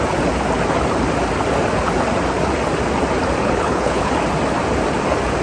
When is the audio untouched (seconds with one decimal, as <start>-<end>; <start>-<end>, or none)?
0.0-3.4; 4.1-5.4